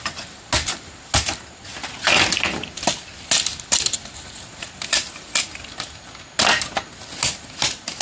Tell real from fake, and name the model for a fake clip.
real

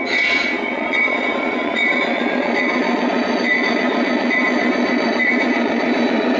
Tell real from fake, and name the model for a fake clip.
fake, vocoder, Vocos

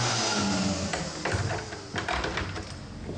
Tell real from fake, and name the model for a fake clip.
real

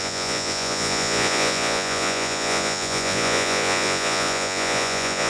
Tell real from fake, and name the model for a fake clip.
fake, vocoder, Vocos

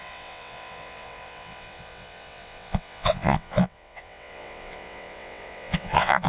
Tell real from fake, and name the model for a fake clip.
fake, vocoder, WaveNeXt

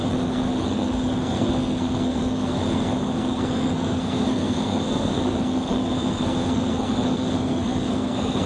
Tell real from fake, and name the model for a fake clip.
fake, codec, SNAC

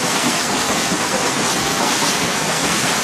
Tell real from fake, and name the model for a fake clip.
fake, codec, SNAC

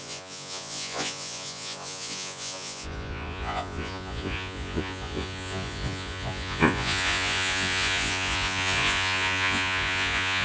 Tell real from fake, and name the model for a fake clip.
fake, vocoder, Vocos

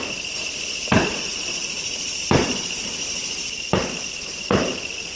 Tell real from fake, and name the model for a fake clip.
real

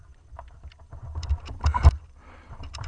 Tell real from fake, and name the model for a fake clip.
fake, vocoder, BigVGAN v2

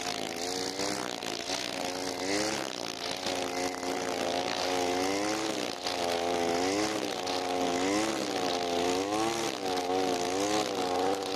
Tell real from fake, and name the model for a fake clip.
real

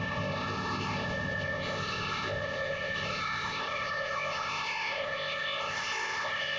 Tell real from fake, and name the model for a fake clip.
fake, codec, ZipCodec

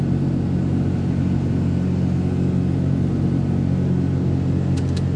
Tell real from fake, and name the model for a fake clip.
real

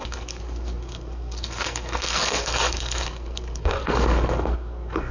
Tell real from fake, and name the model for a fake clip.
fake, codec, SNAC